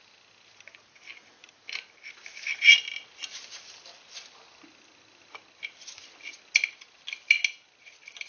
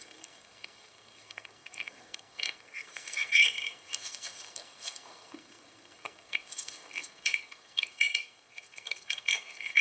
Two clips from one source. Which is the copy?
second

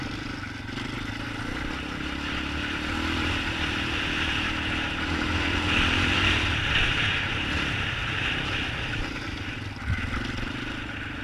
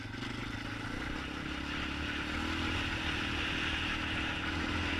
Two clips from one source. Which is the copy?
first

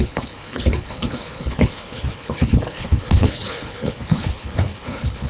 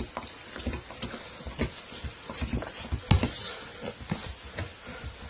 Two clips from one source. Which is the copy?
first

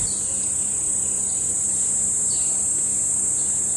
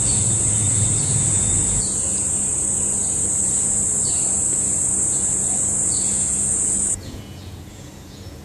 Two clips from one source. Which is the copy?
second